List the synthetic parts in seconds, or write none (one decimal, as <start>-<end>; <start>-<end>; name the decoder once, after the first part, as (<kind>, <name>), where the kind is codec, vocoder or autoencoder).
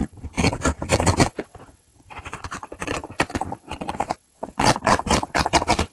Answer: 0.0-5.9 (vocoder, WaveNeXt)